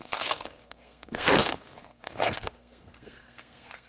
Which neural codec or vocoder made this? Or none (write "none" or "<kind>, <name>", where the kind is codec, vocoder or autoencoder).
codec, SNAC